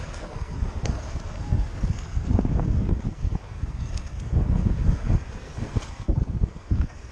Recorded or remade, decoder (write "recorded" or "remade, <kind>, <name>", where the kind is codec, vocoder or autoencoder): remade, codec, SNAC